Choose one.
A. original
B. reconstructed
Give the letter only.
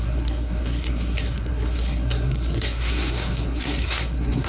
B